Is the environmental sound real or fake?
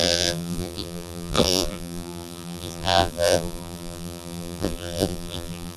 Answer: fake